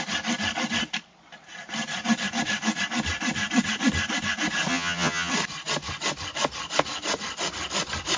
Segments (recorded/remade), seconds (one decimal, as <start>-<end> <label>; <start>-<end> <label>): 0.0-4.7 recorded; 4.7-5.3 remade; 5.3-8.2 recorded